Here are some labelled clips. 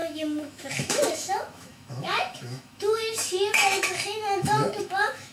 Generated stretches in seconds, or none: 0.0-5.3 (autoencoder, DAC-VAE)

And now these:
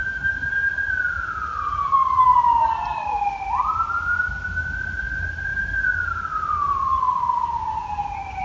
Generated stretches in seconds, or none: none